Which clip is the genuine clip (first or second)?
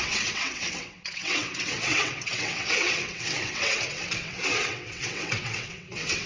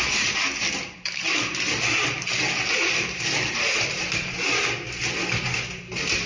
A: second